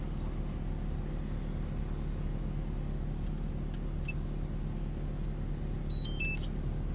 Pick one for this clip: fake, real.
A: real